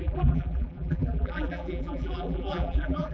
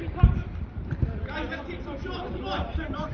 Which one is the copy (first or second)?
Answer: first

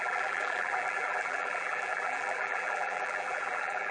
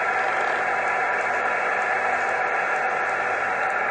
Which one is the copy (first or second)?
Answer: first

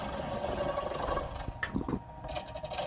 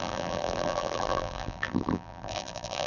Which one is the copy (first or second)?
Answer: second